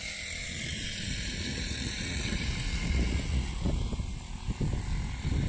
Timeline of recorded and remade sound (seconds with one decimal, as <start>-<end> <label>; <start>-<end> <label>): 0.0-0.4 recorded; 0.4-3.7 remade; 3.7-5.5 recorded